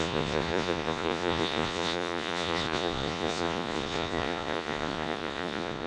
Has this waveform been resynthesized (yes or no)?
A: yes